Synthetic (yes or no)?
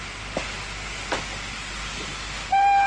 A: no